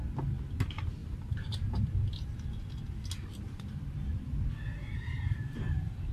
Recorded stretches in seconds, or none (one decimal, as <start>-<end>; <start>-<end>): 0.0-1.0; 1.9-4.7